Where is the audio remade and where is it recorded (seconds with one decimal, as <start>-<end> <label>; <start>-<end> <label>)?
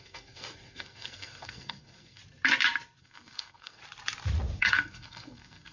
0.0-2.2 remade; 2.2-3.0 recorded; 3.0-3.8 remade; 3.8-4.6 recorded; 4.6-5.7 remade